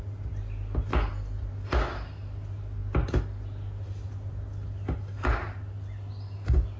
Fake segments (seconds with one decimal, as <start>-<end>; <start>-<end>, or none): none